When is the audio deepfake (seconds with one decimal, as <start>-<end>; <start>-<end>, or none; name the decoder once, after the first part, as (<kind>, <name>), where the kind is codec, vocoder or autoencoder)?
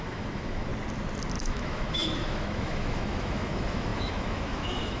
0.0-0.7 (autoencoder, DAC-VAE); 1.4-5.0